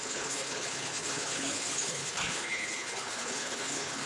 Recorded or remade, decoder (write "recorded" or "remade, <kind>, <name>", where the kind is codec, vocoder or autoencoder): remade, codec, HILCodec